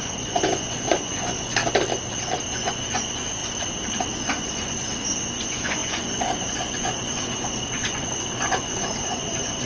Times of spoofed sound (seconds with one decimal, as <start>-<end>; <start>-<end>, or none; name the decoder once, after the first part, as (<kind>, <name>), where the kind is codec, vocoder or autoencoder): 0.0-1.6 (vocoder, Vocos); 2.5-3.4; 4.2-9.7